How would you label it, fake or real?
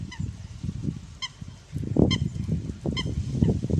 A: real